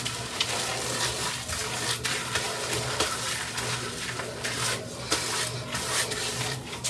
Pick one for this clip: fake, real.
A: real